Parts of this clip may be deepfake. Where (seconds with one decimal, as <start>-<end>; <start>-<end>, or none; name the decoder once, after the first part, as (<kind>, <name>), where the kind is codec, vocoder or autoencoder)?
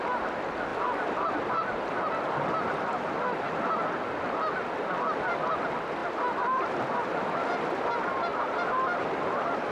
0.7-1.5 (vocoder, BigVGAN v2); 6.0-6.9; 8.3-9.2